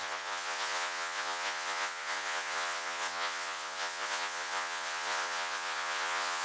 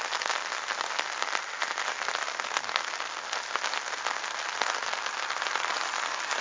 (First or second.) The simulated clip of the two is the first